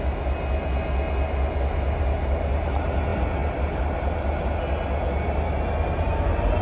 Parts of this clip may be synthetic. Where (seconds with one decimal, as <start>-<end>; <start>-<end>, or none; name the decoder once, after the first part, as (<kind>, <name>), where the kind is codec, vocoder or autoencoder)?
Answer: none

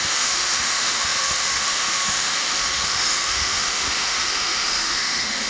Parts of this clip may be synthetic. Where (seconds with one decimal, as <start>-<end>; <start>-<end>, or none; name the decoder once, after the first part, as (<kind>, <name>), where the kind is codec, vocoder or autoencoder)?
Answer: 0.0-5.5 (autoencoder, DAC-VAE)

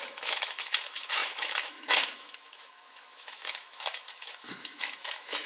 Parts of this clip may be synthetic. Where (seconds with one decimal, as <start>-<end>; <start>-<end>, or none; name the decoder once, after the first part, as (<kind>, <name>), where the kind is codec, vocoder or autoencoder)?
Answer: 0.0-5.5 (autoencoder, DAC-VAE)